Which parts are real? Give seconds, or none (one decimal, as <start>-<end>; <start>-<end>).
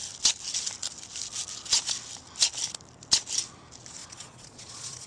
0.0-4.0